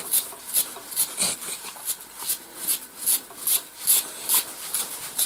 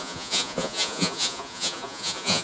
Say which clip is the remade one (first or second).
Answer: second